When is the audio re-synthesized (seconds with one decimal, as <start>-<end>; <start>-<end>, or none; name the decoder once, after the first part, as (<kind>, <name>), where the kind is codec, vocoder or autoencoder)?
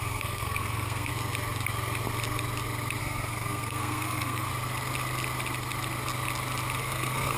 0.0-1.1 (codec, SNAC); 3.0-4.5; 6.8-7.4